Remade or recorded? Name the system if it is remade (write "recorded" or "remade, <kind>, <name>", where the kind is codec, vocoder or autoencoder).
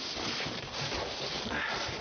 recorded